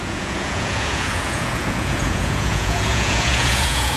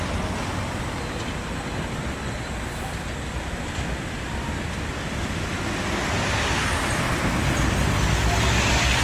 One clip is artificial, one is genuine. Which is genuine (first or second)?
second